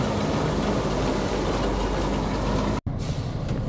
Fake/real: real